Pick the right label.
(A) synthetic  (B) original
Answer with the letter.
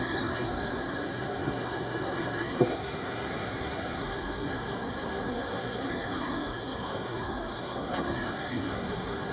A